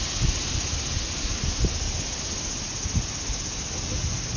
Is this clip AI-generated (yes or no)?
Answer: no